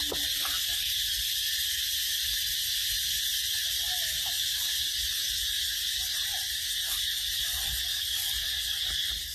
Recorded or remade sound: recorded